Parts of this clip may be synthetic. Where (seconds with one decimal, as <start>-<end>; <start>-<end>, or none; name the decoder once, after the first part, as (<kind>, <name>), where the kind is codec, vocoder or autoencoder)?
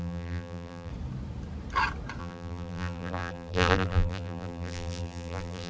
0.0-0.9 (vocoder, BigVGAN v2); 2.2-5.7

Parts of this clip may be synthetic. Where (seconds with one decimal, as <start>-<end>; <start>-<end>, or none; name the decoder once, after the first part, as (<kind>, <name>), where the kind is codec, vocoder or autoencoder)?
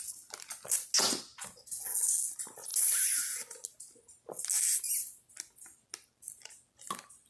none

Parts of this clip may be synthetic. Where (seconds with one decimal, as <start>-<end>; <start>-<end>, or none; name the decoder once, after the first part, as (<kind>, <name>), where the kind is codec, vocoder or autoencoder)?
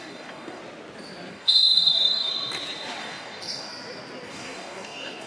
0.0-0.6 (codec, DAC); 1.3-2.3; 3.0-3.7; 4.3-5.3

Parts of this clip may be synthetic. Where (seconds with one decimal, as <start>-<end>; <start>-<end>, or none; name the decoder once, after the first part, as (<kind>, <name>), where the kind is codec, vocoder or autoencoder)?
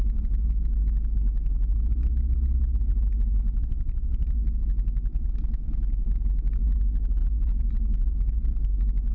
7.2-8.5 (vocoder, Vocos)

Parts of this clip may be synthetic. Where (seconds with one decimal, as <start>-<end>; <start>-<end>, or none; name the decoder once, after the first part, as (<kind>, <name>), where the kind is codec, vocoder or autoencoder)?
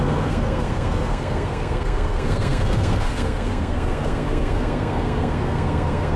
0.0-6.2 (codec, SNAC)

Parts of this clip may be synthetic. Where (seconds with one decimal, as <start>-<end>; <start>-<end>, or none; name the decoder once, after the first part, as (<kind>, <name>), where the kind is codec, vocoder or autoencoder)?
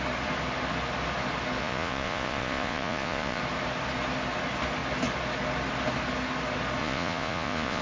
1.6-3.4 (vocoder, Vocos); 6.8-7.8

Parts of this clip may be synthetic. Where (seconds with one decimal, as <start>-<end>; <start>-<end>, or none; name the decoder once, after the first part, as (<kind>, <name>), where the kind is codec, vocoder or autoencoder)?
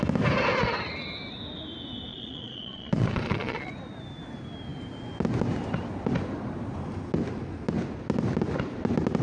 2.1-3.7 (vocoder, Vocos)